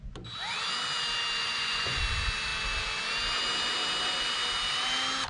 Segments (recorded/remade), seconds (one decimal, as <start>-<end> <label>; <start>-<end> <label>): 0.0-1.4 recorded; 1.4-2.0 remade; 2.0-5.3 recorded